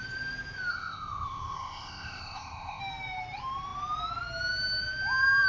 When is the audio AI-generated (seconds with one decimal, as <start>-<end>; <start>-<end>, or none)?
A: 0.7-2.8